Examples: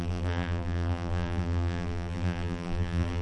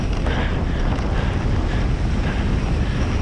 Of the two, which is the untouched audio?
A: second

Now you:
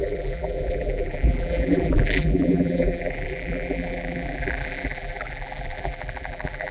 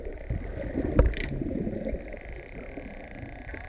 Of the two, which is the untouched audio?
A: second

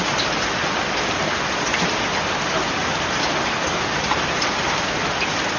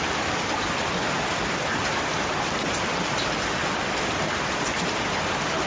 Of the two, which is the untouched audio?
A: first